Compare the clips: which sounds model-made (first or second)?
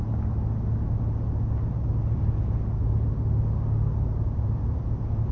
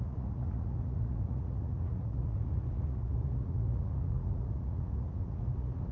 second